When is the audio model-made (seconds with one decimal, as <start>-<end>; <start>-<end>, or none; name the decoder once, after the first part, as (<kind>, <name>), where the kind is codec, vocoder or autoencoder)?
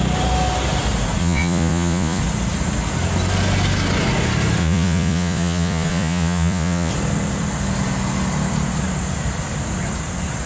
1.2-2.2 (vocoder, Vocos); 4.6-6.9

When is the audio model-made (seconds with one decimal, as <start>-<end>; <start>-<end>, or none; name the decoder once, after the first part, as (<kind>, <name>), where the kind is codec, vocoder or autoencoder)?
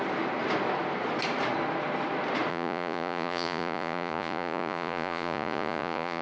2.5-6.2 (vocoder, Vocos)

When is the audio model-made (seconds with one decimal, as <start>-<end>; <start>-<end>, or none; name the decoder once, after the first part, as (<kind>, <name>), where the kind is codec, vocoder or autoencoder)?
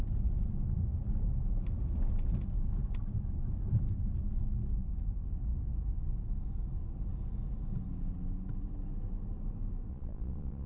9.9-10.7 (vocoder, Vocos)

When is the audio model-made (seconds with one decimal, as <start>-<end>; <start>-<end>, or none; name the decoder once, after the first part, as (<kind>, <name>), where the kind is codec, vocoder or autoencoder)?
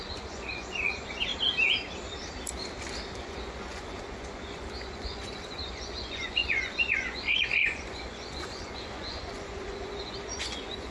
0.0-1.3 (vocoder, Vocos); 3.2-10.9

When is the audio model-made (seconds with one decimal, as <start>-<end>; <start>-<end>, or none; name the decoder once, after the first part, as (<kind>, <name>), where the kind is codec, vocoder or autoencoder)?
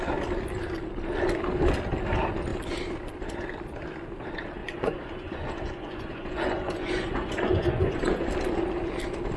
4.6-8.3 (vocoder, Vocos)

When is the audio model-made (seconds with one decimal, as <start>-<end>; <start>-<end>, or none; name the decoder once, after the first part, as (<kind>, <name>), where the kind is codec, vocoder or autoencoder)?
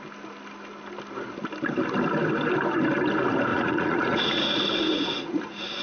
3.5-5.8 (vocoder, Vocos)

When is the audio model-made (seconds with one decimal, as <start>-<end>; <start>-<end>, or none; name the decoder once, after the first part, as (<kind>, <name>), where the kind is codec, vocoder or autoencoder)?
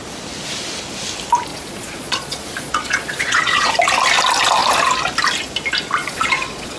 1.5-3.7 (vocoder, Vocos); 6.0-6.8